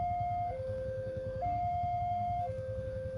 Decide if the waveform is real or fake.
fake